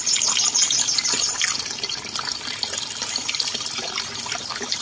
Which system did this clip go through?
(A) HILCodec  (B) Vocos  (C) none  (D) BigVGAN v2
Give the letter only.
C